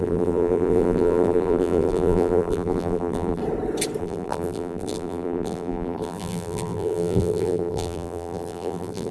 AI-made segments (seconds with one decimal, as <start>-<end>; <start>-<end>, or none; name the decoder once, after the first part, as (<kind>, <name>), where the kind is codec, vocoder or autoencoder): 0.0-3.4 (vocoder, BigVGAN v2); 4.0-9.1